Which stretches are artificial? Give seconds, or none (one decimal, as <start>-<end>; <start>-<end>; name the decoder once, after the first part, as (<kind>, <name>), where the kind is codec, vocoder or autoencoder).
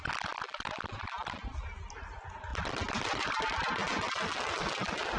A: none